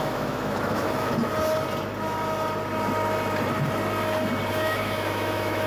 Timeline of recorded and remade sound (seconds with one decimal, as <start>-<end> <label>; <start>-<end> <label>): 0.0-1.1 remade; 1.1-4.5 recorded; 4.5-5.7 remade